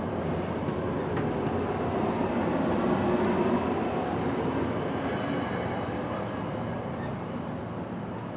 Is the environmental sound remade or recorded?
recorded